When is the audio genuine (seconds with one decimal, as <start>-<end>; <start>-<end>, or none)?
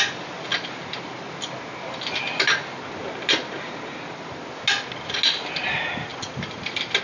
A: 0.0-7.0